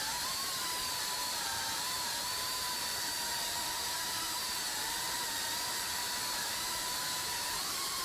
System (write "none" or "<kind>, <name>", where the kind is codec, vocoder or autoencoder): vocoder, BigVGAN v2